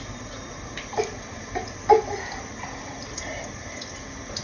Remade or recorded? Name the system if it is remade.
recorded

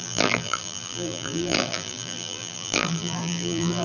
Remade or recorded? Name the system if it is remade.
remade, vocoder, BigVGAN v2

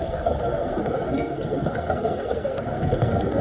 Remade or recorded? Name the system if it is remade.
remade, codec, SNAC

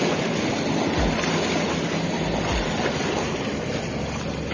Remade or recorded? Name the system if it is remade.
recorded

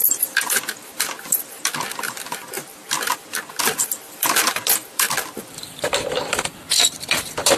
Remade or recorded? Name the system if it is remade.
remade, vocoder, BigVGAN v2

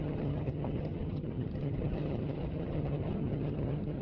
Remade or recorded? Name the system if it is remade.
remade, vocoder, HiFi-GAN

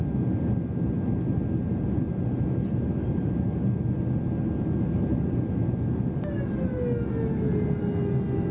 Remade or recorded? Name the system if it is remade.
recorded